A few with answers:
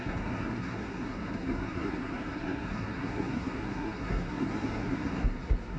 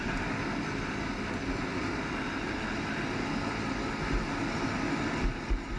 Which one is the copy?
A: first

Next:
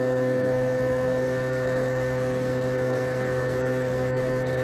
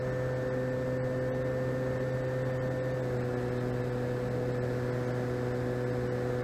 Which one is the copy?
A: first